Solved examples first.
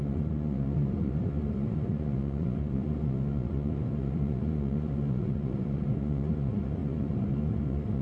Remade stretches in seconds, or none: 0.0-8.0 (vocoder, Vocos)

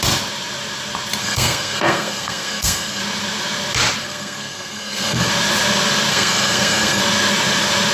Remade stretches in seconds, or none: 1.2-3.0 (codec, SNAC); 4.0-5.3; 6.1-7.0

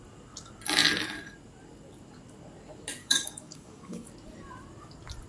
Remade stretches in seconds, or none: 3.0-4.1 (codec, DAC)

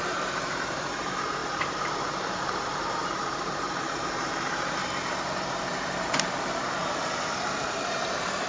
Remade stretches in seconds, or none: 0.0-4.8 (vocoder, BigVGAN v2); 5.5-6.8; 7.4-8.5

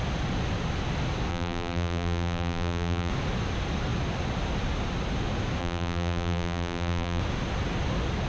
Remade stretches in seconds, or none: 1.3-3.1 (vocoder, BigVGAN v2); 5.6-7.2

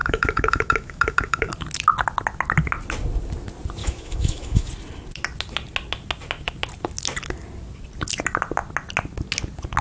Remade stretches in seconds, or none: 0.0-1.5 (autoencoder, DAC-VAE); 3.8-4.7

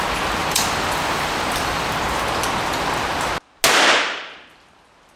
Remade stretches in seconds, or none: 0.4-1.9 (vocoder, BigVGAN v2)

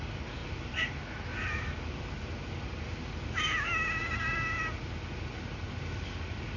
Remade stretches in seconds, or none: 0.4-0.9 (vocoder, BigVGAN v2); 1.3-2.0